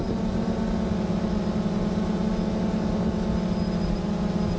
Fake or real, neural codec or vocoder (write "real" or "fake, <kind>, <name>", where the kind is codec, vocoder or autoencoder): real